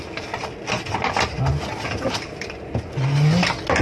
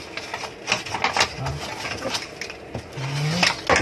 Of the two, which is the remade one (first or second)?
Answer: first